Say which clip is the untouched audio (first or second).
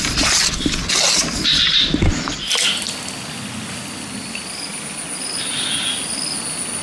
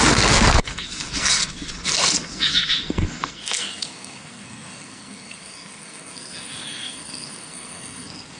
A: first